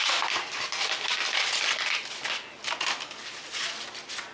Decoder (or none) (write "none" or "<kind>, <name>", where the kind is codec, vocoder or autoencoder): none